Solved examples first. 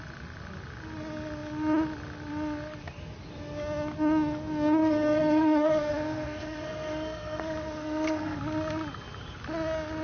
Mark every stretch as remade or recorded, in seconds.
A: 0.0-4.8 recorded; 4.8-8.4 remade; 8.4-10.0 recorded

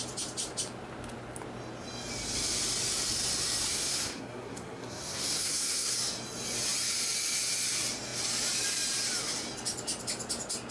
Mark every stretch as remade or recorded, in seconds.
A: 0.0-3.7 recorded; 3.7-5.9 remade; 5.9-10.7 recorded

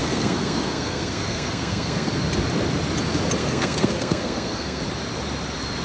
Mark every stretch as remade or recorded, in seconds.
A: 0.0-2.1 remade; 2.1-3.4 recorded; 3.4-4.8 remade; 4.8-5.8 recorded

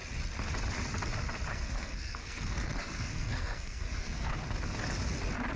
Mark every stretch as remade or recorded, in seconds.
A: 0.0-1.5 recorded; 1.5-4.3 remade; 4.3-5.6 recorded

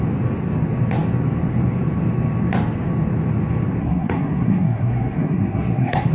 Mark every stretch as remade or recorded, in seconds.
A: 0.0-3.8 recorded; 3.8-6.1 remade